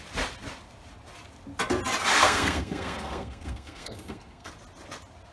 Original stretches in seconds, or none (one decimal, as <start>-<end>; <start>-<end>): 0.0-2.1; 4.5-5.3